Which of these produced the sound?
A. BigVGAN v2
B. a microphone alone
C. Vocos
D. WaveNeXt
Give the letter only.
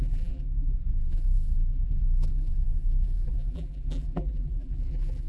A